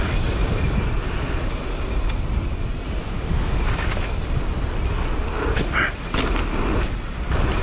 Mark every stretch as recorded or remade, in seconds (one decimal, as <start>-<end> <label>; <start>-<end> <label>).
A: 0.0-3.0 recorded; 3.0-3.6 remade; 3.6-7.6 recorded